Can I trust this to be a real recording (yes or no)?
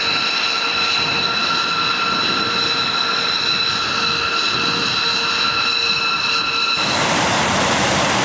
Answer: yes